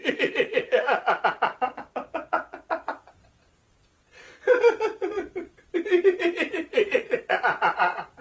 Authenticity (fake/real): fake